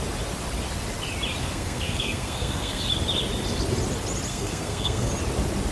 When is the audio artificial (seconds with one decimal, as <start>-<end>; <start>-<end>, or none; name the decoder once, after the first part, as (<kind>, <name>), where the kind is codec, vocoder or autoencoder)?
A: 1.4-2.8 (codec, SNAC); 4.3-5.1